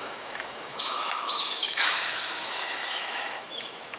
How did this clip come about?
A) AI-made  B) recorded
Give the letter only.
A